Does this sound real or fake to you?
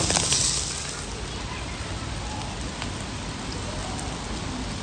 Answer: real